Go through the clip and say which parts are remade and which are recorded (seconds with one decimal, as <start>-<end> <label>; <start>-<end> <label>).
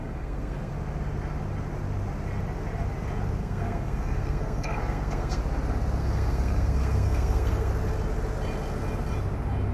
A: 0.0-0.7 remade; 0.7-3.4 recorded; 3.4-5.4 remade; 5.4-6.0 recorded; 6.0-7.7 remade; 7.7-9.7 recorded